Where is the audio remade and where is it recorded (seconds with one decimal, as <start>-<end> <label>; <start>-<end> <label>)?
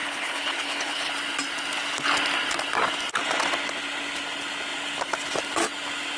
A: 0.0-1.1 remade; 1.1-6.2 recorded